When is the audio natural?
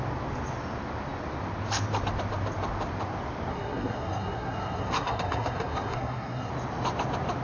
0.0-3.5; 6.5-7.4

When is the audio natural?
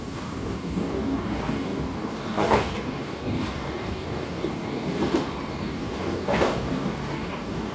5.0-5.5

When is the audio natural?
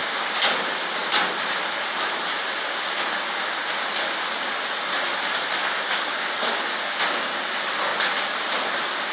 0.5-5.6; 7.4-9.1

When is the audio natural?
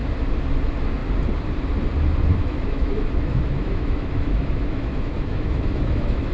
0.0-2.3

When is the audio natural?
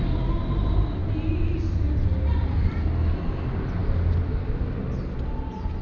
0.0-5.8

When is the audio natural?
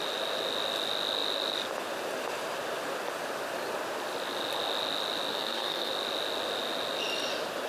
0.0-5.3; 5.9-7.7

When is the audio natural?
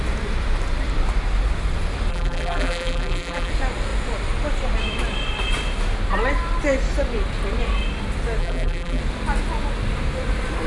0.0-2.1; 3.5-8.4; 9.0-10.7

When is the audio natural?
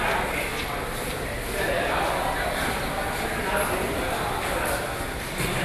0.0-5.6